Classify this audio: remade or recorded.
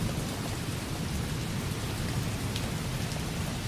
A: recorded